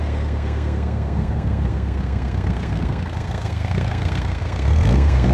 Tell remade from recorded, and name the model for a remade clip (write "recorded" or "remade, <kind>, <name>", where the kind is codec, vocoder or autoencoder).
remade, codec, SNAC